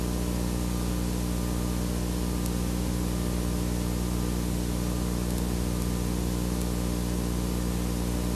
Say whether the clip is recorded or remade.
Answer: recorded